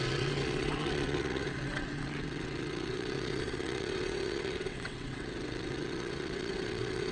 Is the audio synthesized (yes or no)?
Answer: yes